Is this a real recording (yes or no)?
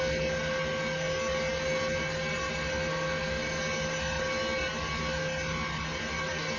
yes